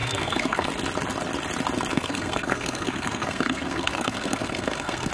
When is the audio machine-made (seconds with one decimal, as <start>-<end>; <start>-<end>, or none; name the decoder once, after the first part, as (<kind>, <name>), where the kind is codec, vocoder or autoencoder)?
0.0-0.7 (codec, SNAC); 1.9-5.1